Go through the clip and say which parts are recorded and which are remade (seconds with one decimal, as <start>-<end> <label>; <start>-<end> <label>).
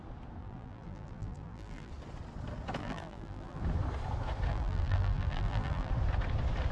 0.0-0.4 recorded; 0.4-1.9 remade; 1.9-2.8 recorded; 2.8-3.6 remade; 3.6-4.5 recorded; 4.5-5.9 remade; 5.9-6.7 recorded